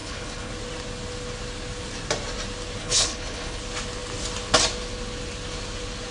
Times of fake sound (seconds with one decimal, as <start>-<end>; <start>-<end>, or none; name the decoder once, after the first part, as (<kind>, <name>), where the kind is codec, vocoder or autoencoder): 0.0-0.5 (codec, HILCodec); 2.8-3.6